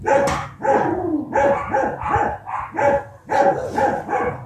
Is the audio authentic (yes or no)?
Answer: yes